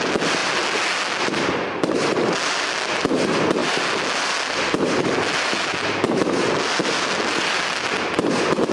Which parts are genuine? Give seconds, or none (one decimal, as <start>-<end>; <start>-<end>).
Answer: 0.0-8.7

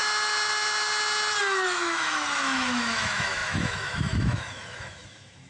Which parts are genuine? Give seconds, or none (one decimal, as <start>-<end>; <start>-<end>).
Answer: 0.0-1.4

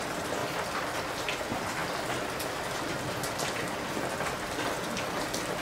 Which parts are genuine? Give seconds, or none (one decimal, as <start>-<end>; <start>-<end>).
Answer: 0.0-5.6

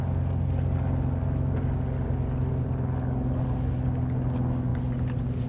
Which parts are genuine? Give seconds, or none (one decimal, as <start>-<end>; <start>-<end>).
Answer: 0.0-5.5

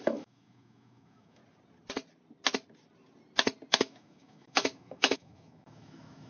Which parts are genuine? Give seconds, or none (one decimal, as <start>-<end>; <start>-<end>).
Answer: 1.4-3.7

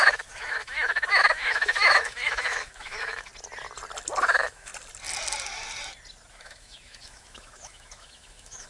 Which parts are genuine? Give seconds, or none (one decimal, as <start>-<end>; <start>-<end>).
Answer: 3.3-4.2; 4.7-6.3

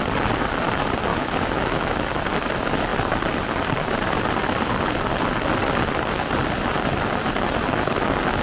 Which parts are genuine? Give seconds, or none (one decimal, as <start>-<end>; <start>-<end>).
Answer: 0.0-1.1; 2.2-8.4